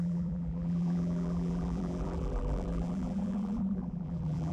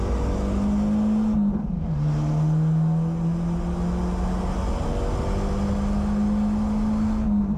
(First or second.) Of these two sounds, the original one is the second